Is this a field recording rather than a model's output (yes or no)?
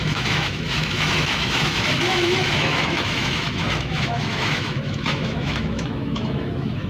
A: no